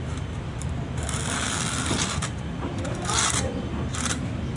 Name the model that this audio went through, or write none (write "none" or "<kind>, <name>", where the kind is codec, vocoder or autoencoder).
vocoder, BigVGAN v2